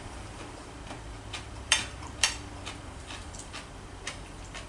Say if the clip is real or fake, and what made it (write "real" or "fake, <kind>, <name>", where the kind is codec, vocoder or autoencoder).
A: fake, vocoder, BigVGAN v2